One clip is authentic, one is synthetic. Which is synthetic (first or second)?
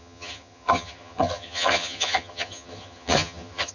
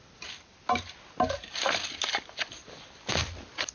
first